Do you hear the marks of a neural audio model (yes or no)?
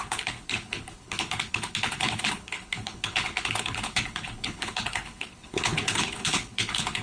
yes